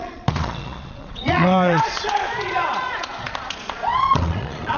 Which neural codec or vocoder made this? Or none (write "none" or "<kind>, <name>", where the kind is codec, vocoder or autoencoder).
vocoder, Vocos